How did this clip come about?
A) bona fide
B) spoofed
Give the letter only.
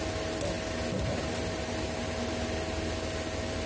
A